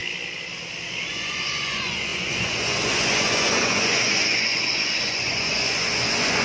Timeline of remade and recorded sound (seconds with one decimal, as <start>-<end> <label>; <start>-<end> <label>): 0.0-1.1 recorded; 1.1-6.4 remade